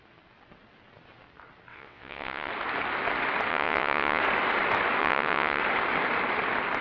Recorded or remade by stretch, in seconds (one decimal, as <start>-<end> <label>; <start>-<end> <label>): 0.0-1.7 recorded; 1.7-2.5 remade; 2.5-3.5 recorded; 3.5-4.2 remade; 4.2-5.0 recorded; 5.0-5.6 remade; 5.6-6.8 recorded